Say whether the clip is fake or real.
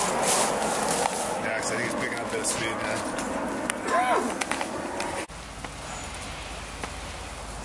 real